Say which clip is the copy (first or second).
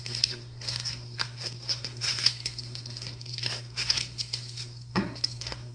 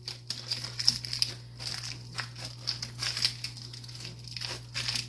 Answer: first